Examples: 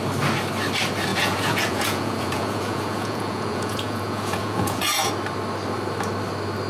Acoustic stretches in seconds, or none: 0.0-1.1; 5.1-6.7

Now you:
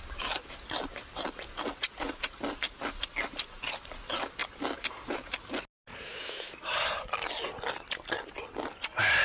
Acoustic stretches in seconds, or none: 0.0-6.1; 6.7-9.2